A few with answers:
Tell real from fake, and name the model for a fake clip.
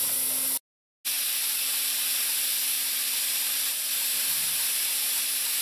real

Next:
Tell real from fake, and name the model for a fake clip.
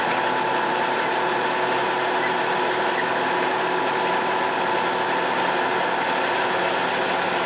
real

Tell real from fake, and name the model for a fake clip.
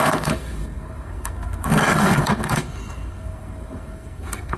fake, codec, SNAC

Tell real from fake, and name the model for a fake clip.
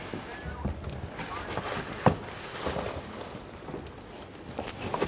fake, vocoder, BigVGAN v2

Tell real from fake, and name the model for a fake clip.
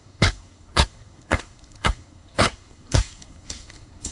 fake, codec, SNAC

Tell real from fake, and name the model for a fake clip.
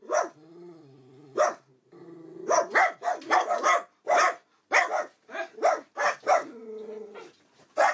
real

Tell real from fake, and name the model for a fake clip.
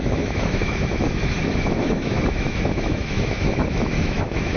fake, autoencoder, DAC-VAE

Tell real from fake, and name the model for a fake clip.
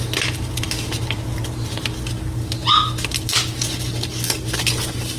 real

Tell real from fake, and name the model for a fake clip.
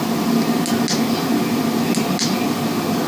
real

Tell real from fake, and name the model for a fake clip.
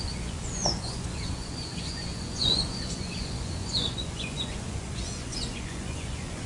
fake, vocoder, Vocos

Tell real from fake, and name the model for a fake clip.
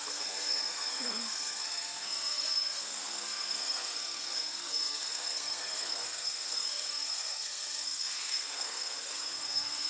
fake, codec, SNAC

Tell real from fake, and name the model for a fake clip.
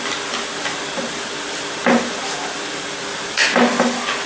real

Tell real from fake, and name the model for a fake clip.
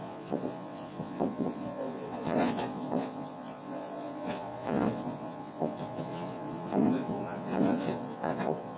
fake, vocoder, Vocos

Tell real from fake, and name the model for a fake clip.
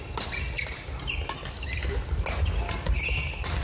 real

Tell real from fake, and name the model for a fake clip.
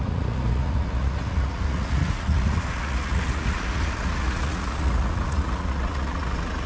fake, vocoder, Vocos